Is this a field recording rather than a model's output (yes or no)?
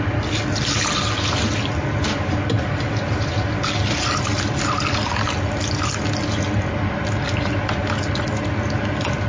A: yes